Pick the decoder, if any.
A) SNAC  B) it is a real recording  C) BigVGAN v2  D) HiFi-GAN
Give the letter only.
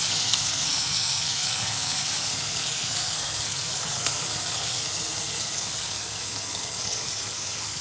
A